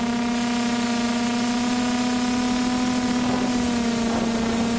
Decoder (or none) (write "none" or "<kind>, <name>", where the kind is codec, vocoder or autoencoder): none